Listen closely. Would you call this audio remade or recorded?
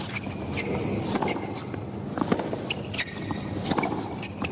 recorded